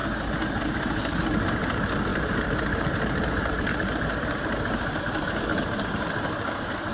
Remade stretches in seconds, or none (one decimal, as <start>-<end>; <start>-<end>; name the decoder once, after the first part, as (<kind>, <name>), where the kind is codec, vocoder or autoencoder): 2.1-5.0 (vocoder, BigVGAN v2)